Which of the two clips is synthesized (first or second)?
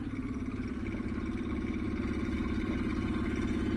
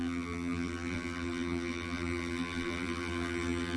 second